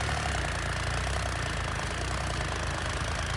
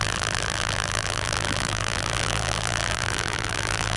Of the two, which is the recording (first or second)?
first